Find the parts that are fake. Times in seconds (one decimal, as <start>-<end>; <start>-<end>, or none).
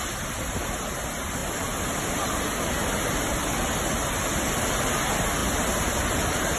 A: none